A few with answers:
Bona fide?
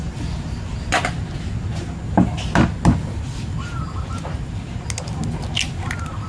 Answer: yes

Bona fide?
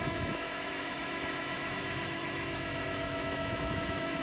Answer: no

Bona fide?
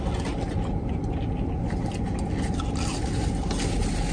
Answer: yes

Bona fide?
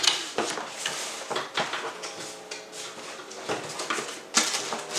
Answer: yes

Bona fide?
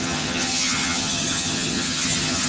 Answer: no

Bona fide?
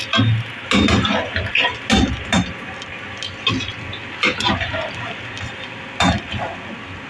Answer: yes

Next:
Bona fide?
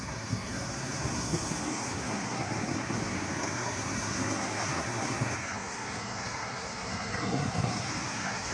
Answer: no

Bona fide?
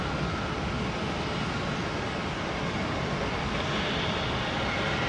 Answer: yes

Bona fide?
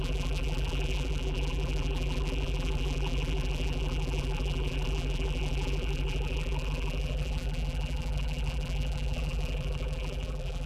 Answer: no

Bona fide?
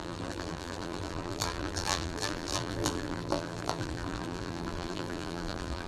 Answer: no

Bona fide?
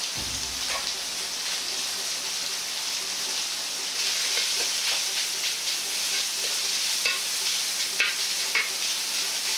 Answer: yes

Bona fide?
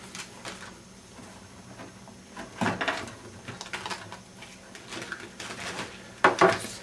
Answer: yes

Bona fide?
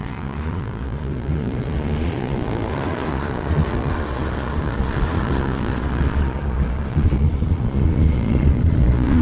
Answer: no